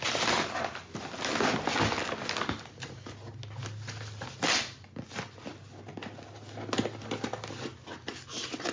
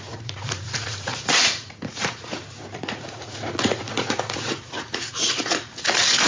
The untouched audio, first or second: first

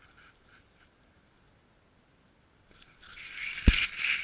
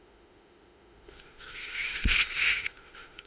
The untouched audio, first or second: first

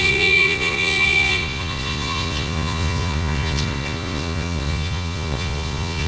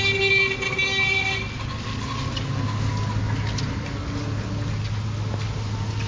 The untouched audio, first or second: second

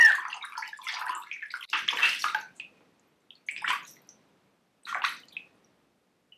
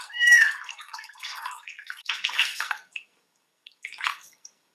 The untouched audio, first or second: first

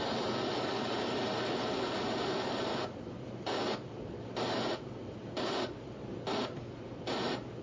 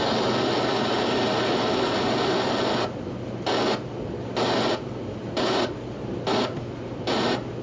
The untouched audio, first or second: second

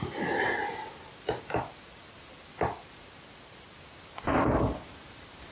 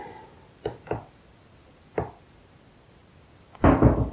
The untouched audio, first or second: second